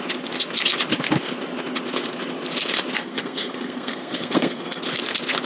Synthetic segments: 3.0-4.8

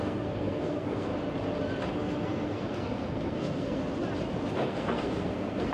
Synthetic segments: 0.0-1.1; 1.9-3.8; 4.5-5.7

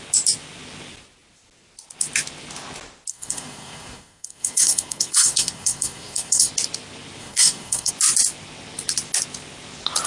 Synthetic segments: 3.1-6.5; 7.2-7.9

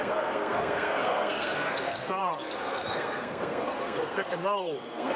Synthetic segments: 0.0-5.2

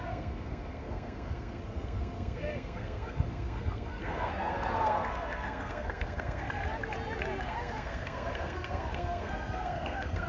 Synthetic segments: 0.0-6.6; 7.4-10.3

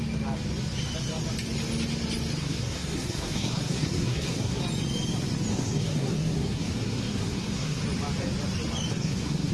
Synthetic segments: 2.4-4.6; 5.5-7.8; 8.9-9.5

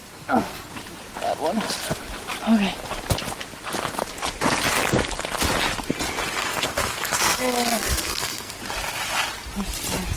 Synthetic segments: 0.0-0.7; 6.4-8.6

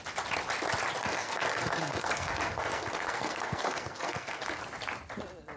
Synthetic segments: 1.0-4.4